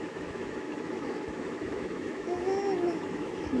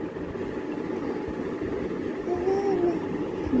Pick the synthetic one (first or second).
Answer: first